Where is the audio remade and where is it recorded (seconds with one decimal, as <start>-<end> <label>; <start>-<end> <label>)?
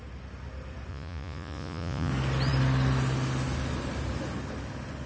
0.0-0.9 recorded; 0.9-2.1 remade; 2.1-5.1 recorded